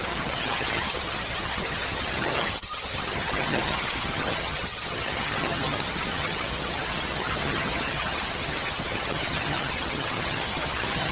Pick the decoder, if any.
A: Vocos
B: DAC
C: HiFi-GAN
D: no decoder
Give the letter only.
C